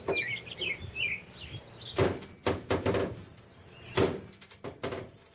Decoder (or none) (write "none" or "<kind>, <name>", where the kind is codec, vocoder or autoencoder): none